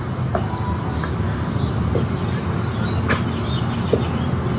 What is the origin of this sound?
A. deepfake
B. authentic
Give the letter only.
B